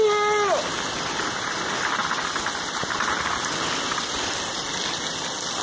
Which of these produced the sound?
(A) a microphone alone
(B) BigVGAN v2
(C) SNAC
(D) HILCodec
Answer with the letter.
A